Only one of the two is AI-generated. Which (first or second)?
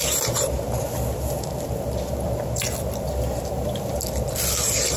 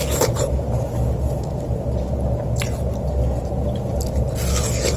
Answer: first